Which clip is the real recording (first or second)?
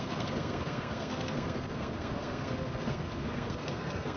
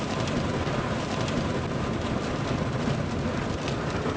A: second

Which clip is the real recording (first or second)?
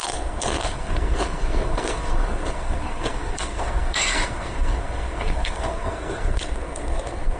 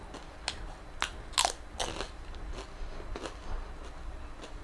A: second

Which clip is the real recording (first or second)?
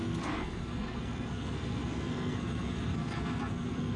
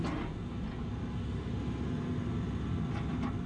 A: second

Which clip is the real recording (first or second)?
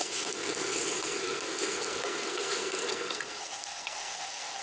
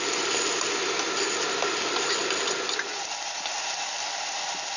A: second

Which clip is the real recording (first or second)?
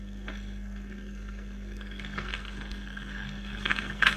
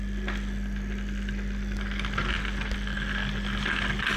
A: second